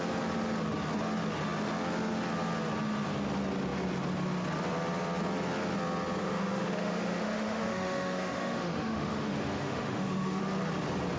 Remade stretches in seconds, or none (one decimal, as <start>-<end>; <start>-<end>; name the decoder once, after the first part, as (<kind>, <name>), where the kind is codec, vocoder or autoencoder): 6.2-10.4 (autoencoder, DAC-VAE)